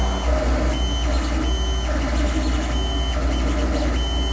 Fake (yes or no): no